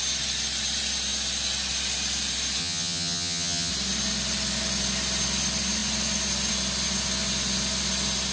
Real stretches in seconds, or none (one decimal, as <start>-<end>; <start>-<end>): 0.0-2.6; 3.7-8.3